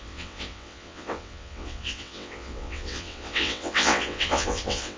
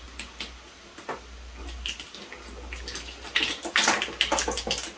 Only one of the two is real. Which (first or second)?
second